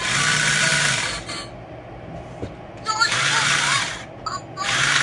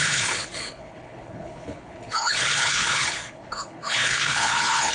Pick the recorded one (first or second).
first